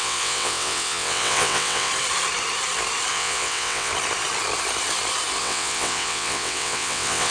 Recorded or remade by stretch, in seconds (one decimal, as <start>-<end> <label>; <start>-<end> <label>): 0.0-1.9 remade; 1.9-3.1 recorded; 3.1-3.9 remade; 3.9-5.4 recorded; 5.4-7.3 remade